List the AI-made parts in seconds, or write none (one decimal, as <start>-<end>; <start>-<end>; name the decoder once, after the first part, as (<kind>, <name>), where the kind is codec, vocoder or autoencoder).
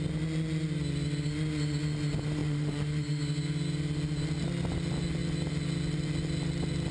2.4-3.2 (vocoder, BigVGAN v2)